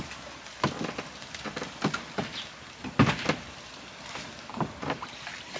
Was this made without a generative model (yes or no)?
yes